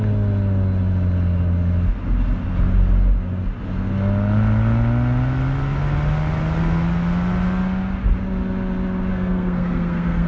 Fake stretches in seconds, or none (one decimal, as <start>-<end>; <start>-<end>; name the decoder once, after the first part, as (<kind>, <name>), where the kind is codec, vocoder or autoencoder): 9.1-10.3 (codec, SNAC)